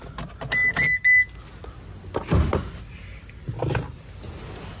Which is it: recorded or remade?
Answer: recorded